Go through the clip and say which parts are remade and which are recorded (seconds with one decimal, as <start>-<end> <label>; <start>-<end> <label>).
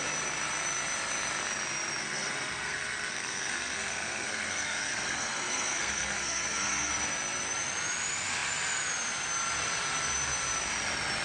0.0-2.0 recorded; 2.0-6.9 remade; 6.9-11.2 recorded